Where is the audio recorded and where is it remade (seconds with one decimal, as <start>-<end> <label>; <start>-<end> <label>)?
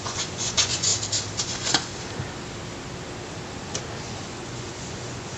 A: 0.0-0.9 remade; 0.9-1.4 recorded; 1.4-1.9 remade; 1.9-4.0 recorded; 4.0-5.4 remade